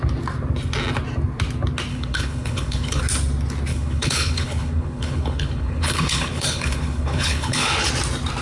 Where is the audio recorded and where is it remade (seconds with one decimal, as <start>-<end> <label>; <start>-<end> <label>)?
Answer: 0.0-1.9 recorded; 1.9-3.0 remade; 3.0-3.7 recorded; 3.7-7.9 remade; 7.9-8.4 recorded